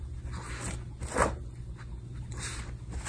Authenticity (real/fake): real